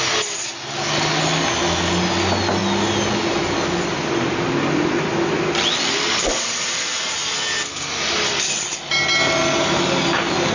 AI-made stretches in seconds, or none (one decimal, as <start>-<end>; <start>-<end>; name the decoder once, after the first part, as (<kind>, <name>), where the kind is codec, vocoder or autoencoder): none

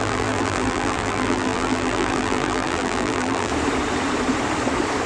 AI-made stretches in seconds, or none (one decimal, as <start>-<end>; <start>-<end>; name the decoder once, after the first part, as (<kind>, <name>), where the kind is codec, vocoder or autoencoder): 0.0-3.5 (vocoder, BigVGAN v2)

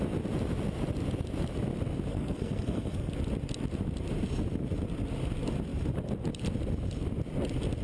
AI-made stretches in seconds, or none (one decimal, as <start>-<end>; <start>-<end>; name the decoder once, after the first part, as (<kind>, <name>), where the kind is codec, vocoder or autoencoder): 2.1-3.1 (codec, SNAC)

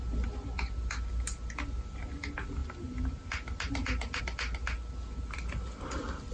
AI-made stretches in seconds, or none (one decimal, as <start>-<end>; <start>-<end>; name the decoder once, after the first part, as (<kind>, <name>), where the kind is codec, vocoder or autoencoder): none

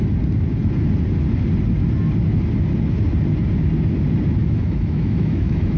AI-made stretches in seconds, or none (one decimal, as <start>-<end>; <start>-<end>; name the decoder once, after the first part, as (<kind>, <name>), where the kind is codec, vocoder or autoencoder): 4.4-5.8 (autoencoder, DAC-VAE)